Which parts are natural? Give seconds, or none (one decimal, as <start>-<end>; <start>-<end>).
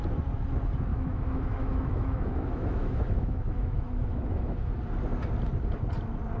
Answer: 0.0-0.9; 4.7-6.4